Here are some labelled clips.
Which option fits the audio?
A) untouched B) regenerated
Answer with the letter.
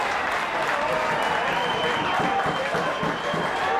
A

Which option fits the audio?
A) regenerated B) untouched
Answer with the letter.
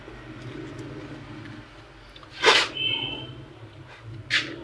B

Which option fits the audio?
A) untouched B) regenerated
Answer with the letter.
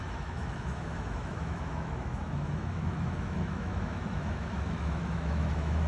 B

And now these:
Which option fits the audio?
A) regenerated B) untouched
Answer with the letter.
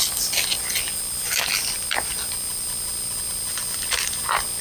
B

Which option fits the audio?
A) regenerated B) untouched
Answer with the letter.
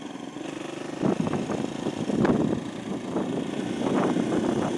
B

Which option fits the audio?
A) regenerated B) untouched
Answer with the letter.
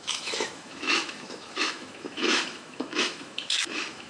A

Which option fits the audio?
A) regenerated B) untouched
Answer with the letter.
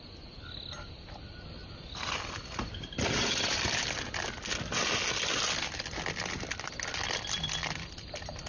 B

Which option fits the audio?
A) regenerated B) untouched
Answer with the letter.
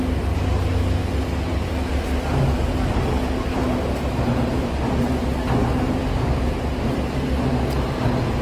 B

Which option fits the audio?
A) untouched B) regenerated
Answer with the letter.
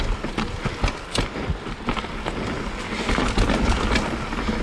A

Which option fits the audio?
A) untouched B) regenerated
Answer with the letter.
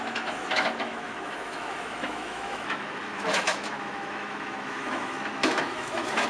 B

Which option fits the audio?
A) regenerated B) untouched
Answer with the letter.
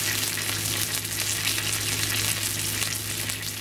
B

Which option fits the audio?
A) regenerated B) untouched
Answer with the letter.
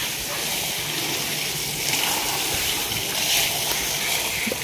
B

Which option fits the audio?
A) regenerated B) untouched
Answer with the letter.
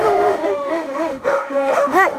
A